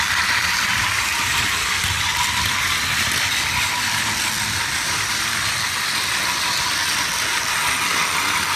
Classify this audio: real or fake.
real